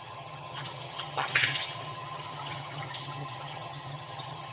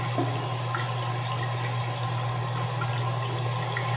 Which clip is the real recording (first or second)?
second